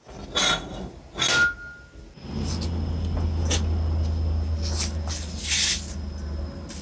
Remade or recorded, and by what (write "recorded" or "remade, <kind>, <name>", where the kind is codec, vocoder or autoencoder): recorded